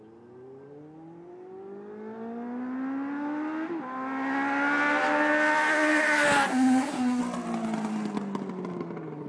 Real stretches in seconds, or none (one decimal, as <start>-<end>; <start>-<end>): 0.0-6.5; 7.2-9.3

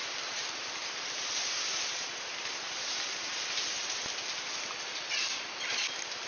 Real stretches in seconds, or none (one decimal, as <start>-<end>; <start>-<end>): 0.0-6.3

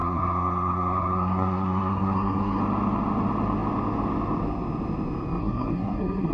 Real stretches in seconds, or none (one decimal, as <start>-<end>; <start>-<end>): 2.6-5.4

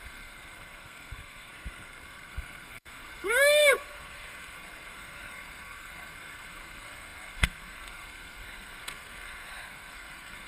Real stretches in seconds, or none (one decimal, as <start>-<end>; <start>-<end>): none

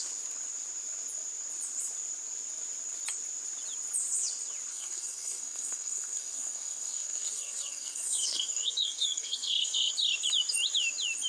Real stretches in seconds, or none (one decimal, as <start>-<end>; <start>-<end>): 0.0-4.7; 9.9-11.3

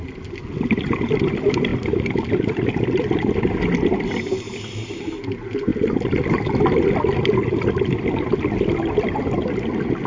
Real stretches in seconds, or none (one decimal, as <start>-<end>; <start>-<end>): 0.0-10.1

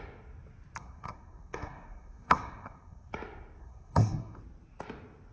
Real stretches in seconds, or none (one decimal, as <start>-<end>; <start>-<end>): 0.0-0.8; 3.1-3.6; 4.4-5.3